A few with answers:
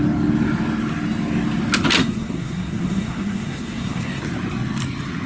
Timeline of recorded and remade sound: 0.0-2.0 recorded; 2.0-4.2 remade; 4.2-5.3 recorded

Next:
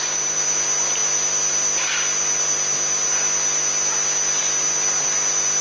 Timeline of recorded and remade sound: 0.0-5.6 recorded

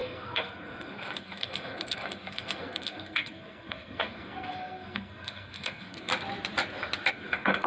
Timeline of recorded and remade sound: 0.0-6.1 remade; 6.1-7.1 recorded; 7.1-7.7 remade

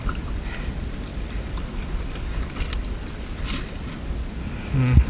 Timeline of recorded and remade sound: 0.0-5.1 recorded

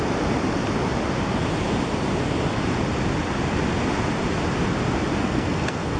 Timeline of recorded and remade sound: 0.0-5.2 recorded; 5.2-6.0 remade